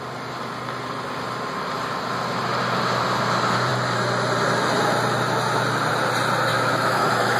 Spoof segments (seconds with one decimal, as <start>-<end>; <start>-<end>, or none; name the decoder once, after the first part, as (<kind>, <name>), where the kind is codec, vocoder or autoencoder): 6.5-7.4 (autoencoder, DAC-VAE)